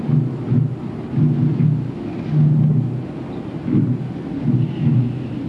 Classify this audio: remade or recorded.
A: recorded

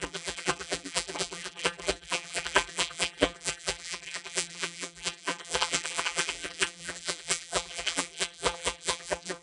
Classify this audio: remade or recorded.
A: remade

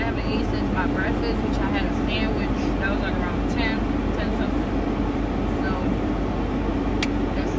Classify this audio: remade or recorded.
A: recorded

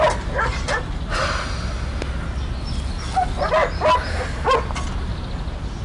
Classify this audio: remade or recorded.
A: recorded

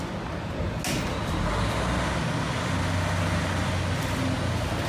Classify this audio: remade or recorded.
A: recorded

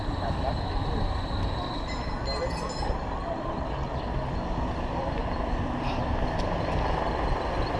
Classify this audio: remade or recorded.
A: recorded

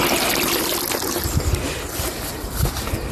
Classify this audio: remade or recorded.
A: recorded